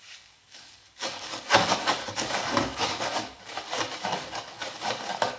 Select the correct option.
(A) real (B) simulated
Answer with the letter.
B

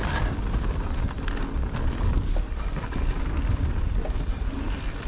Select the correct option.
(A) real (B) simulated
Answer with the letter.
A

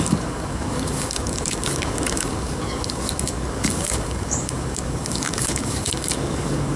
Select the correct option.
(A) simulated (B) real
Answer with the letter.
A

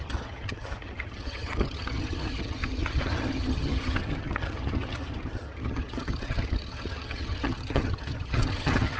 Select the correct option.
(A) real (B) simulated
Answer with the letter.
B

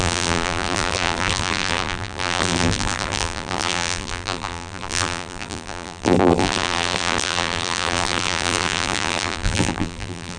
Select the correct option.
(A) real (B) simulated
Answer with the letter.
B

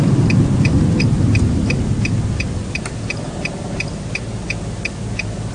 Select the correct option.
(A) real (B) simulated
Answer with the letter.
A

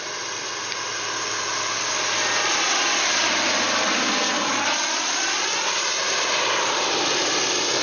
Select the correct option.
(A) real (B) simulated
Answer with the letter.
A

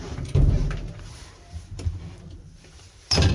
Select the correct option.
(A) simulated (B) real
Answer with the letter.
A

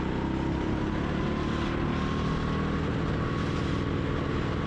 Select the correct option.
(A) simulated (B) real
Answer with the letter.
B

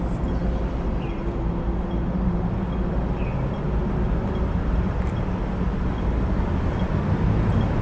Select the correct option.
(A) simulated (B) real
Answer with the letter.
B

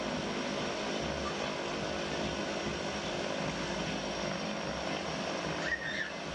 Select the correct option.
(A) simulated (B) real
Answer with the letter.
B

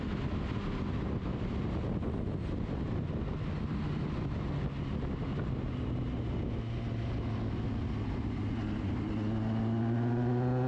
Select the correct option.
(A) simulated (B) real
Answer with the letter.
B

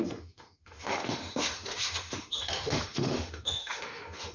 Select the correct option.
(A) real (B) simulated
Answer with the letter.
B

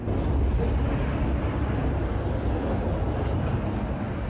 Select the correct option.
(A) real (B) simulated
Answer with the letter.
A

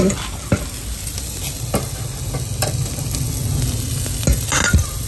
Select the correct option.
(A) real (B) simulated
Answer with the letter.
A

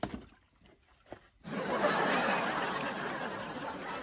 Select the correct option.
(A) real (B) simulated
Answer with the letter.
A